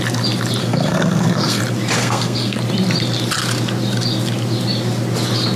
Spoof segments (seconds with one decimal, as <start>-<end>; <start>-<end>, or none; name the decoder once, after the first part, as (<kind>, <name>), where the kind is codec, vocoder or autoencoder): 0.6-1.6 (codec, SNAC); 2.0-2.6